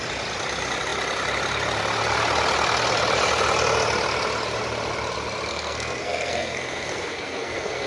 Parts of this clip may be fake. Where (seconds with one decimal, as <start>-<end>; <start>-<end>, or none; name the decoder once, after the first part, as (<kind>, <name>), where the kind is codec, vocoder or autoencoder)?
5.5-7.9 (codec, SNAC)

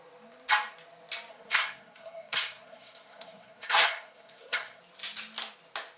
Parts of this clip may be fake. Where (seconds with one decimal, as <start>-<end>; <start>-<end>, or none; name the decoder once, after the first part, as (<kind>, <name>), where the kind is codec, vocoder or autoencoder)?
1.3-4.8 (codec, SNAC)

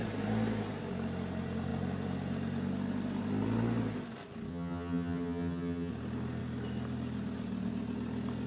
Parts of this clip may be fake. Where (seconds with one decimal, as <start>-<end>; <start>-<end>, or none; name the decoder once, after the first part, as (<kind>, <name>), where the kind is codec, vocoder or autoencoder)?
4.5-5.9 (vocoder, HiFi-GAN)

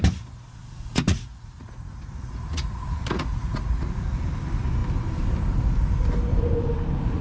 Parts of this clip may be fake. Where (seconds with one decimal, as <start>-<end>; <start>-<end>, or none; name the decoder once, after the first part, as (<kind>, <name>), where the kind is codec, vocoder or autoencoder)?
0.6-4.2 (vocoder, Vocos)

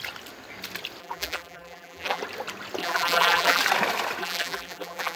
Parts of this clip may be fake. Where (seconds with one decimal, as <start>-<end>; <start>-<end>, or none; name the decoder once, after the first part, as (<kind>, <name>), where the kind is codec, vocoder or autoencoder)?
1.0-2.2 (vocoder, BigVGAN v2); 2.8-3.6; 4.2-5.2

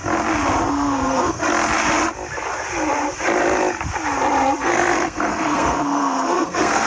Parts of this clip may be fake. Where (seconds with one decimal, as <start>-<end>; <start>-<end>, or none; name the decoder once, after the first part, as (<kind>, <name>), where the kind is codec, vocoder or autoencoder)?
0.7-1.4 (codec, SNAC); 4.6-6.9